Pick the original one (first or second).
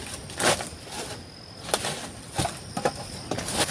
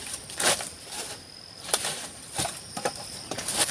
first